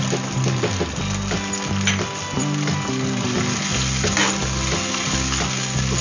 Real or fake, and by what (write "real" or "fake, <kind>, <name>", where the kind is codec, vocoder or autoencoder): real